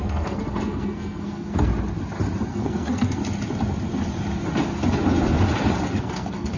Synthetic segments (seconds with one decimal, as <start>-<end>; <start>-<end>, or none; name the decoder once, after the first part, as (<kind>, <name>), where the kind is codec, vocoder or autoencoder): 0.0-1.7 (codec, SNAC); 2.5-3.2; 6.0-6.6